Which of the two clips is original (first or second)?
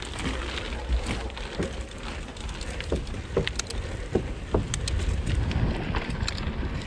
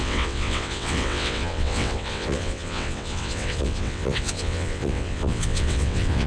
first